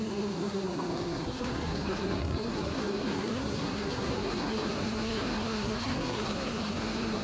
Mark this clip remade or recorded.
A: remade